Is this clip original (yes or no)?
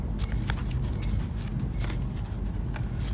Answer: yes